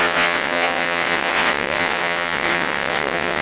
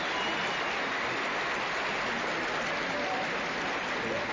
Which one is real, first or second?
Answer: second